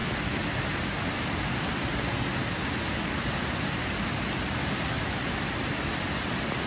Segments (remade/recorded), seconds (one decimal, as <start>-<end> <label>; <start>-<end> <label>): 0.0-6.7 recorded